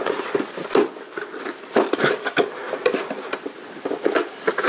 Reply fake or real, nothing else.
real